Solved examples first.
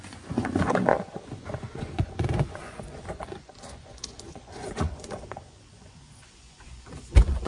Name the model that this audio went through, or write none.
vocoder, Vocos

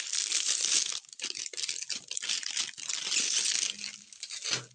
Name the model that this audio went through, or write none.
none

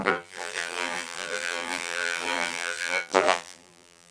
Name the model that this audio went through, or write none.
vocoder, BigVGAN v2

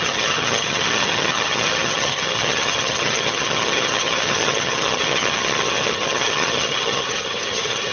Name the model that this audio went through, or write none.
vocoder, HiFi-GAN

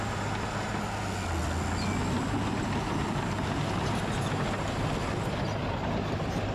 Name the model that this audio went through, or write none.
none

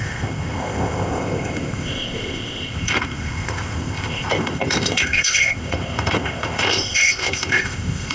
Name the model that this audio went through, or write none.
codec, ZipCodec